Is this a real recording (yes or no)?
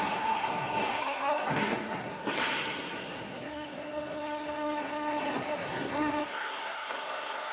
no